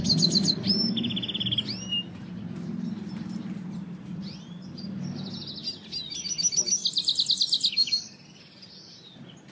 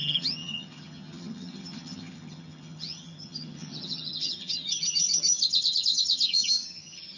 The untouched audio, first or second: first